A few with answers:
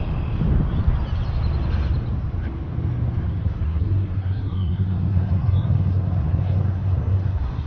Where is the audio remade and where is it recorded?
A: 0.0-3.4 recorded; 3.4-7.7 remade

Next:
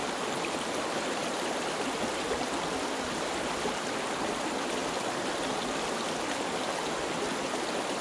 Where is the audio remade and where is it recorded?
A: 0.0-8.0 recorded

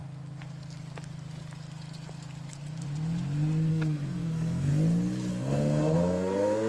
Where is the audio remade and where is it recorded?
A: 0.0-3.7 recorded; 3.7-4.7 remade; 4.7-5.3 recorded; 5.3-6.7 remade

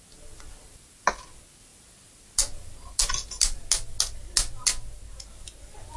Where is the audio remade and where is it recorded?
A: 0.0-6.0 recorded